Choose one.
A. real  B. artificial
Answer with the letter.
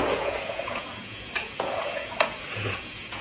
B